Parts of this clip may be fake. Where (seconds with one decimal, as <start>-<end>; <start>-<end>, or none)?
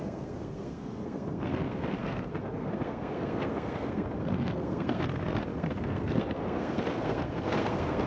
0.0-8.1